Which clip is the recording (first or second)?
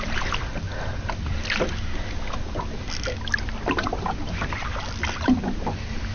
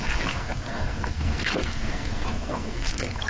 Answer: first